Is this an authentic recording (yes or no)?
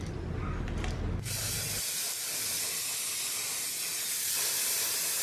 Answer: yes